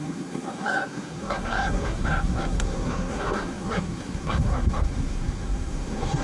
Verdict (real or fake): fake